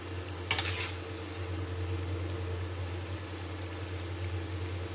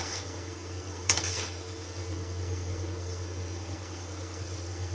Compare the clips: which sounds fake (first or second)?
second